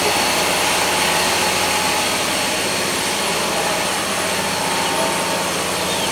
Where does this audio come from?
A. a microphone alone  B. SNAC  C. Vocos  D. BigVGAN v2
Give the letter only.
A